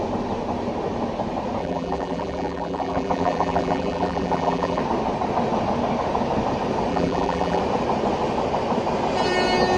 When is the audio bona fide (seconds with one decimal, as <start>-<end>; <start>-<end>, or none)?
0.0-1.6; 4.8-6.9; 7.6-9.8